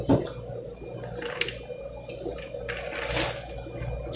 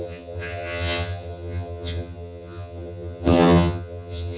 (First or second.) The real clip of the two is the first